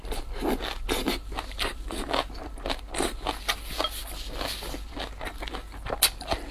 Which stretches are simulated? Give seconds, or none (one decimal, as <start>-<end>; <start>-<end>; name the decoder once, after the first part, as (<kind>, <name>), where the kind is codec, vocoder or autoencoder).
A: none